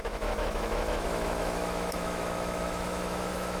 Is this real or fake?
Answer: fake